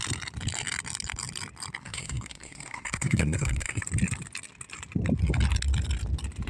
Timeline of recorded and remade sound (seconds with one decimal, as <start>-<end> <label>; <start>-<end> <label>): 0.0-1.8 recorded; 1.8-3.8 remade; 3.8-6.5 recorded